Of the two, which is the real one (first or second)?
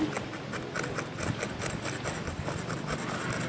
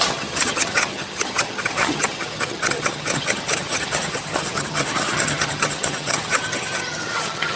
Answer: first